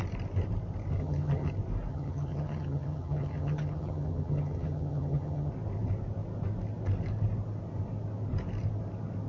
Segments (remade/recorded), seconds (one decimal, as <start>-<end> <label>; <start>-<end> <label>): 0.0-1.0 recorded; 1.0-1.5 remade; 1.5-1.9 recorded; 1.9-5.5 remade; 5.5-9.3 recorded

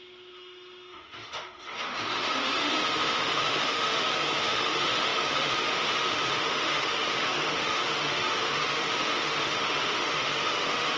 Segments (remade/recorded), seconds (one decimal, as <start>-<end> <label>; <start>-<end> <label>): 0.0-11.0 remade

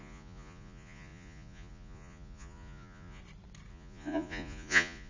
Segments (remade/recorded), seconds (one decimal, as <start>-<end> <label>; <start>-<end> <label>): 0.0-3.2 remade; 3.2-3.7 recorded; 3.7-5.1 remade

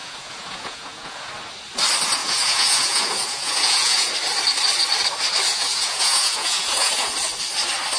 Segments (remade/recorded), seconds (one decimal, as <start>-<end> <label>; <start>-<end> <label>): 0.0-1.3 remade; 1.3-2.2 recorded; 2.2-4.1 remade; 4.1-5.5 recorded; 5.5-7.1 remade; 7.1-8.0 recorded

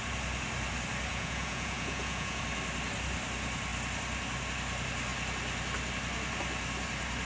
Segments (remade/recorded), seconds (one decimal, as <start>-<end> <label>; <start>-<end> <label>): 0.0-1.1 recorded; 1.1-2.4 remade; 2.4-7.2 recorded

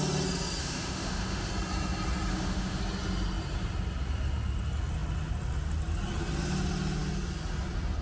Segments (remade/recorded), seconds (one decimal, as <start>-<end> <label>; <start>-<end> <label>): 0.0-0.6 recorded; 0.6-1.5 remade; 1.5-2.3 recorded; 2.3-2.8 remade; 2.8-8.0 recorded